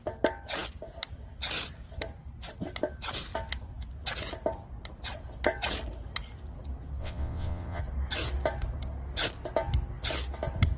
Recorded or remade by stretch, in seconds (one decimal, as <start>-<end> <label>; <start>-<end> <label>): 0.0-7.0 recorded; 7.0-7.8 remade; 7.8-10.8 recorded